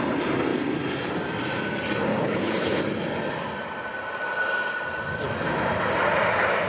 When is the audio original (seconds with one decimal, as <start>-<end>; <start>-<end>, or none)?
0.0-2.1; 2.8-6.7